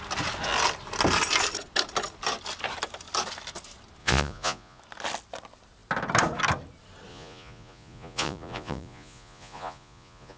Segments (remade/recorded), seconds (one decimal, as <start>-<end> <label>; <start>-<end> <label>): 0.0-4.0 recorded; 4.0-4.8 remade; 4.8-7.1 recorded; 7.1-10.4 remade